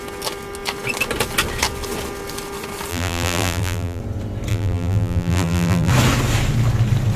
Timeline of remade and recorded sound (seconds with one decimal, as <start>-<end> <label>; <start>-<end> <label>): 0.0-2.9 recorded; 2.9-4.0 remade; 4.0-4.5 recorded; 4.5-5.9 remade; 5.9-7.2 recorded